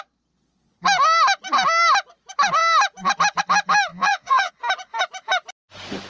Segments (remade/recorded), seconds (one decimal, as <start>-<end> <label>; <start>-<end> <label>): 0.0-3.9 recorded; 3.9-4.5 remade; 4.5-6.1 recorded